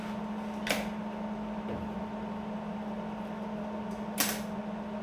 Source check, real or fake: real